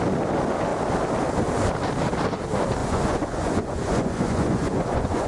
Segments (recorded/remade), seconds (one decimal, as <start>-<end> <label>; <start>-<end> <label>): 0.0-2.8 recorded; 2.8-5.3 remade